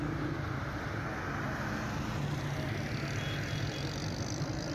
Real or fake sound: real